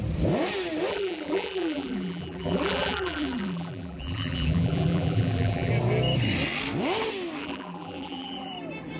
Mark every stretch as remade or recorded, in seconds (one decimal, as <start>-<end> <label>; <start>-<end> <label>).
0.0-0.9 recorded; 0.9-5.7 remade; 5.7-7.4 recorded; 7.4-8.5 remade; 8.5-9.0 recorded